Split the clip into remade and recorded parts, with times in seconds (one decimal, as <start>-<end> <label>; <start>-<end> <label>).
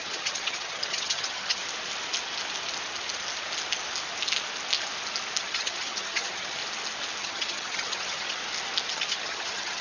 0.0-1.6 remade; 1.6-5.4 recorded; 5.4-6.6 remade; 6.6-7.2 recorded; 7.2-8.4 remade; 8.4-8.9 recorded; 8.9-9.8 remade